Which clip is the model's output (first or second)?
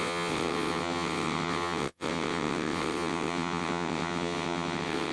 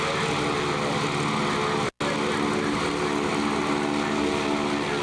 first